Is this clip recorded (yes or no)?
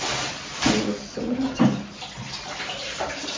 yes